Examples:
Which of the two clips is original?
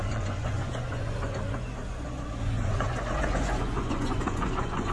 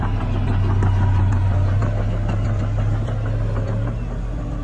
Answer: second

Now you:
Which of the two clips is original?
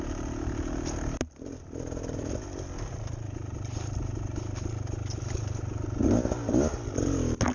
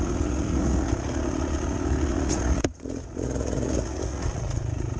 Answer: first